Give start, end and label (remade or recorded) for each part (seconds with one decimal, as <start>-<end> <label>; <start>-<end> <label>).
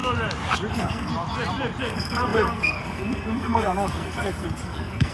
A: 0.0-0.7 recorded; 0.7-1.1 remade; 1.1-1.8 recorded; 1.8-5.1 remade